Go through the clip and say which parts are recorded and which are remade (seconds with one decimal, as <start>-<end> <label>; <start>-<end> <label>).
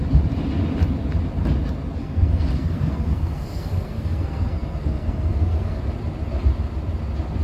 0.0-2.0 recorded; 2.0-5.8 remade; 5.8-7.4 recorded